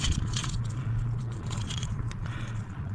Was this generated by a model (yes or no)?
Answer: yes